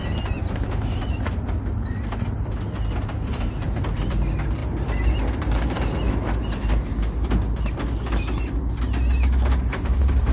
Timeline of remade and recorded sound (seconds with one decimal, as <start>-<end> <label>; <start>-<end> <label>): 0.0-10.3 recorded